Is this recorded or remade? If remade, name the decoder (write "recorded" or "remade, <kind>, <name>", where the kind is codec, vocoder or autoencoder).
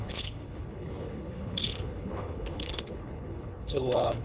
remade, codec, HILCodec